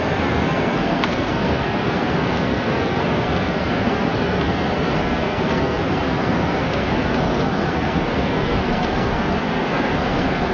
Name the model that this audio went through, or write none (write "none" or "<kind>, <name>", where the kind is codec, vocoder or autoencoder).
codec, SNAC